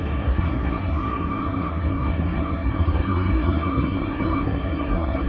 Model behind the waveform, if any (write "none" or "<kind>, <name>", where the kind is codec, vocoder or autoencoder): codec, SNAC